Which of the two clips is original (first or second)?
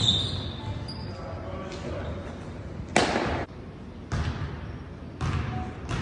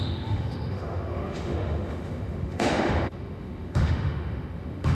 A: first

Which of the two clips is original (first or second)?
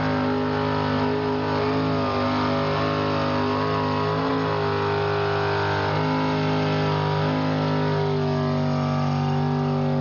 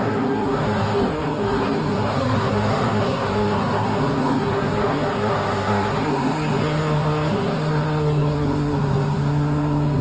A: first